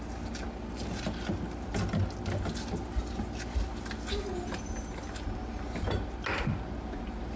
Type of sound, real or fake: real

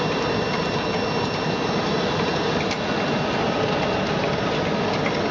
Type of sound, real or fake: real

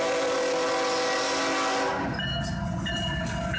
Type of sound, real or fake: real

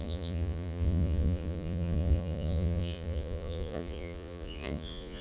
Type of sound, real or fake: fake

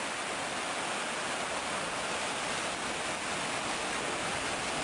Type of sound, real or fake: real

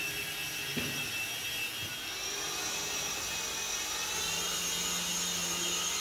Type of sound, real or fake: real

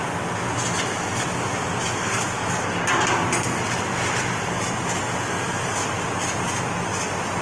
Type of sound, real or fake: real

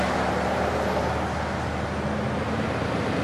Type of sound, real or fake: real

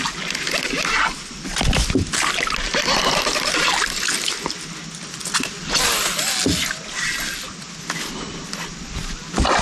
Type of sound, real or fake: real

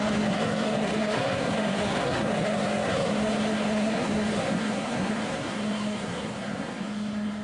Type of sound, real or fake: fake